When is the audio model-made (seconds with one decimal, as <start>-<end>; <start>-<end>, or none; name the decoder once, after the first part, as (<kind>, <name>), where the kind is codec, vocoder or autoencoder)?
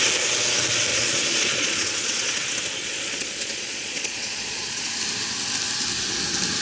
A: 0.9-4.9 (vocoder, Vocos)